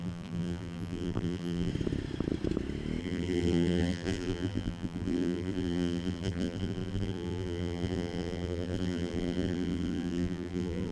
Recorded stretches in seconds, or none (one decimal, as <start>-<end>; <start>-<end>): 1.7-3.0